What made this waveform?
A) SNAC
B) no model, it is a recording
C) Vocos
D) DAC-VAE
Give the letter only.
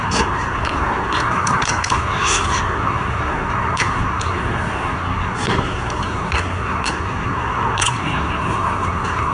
A